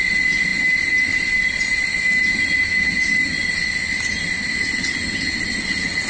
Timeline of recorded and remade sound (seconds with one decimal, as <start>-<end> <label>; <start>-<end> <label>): 0.0-6.1 recorded